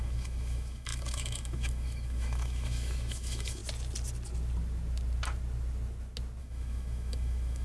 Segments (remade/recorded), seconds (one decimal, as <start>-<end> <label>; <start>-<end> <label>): 0.0-3.6 remade; 3.6-6.4 recorded; 6.4-7.6 remade